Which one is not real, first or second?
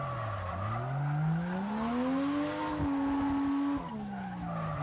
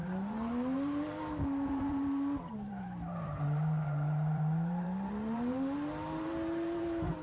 second